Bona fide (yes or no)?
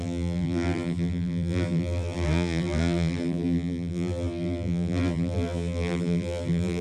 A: no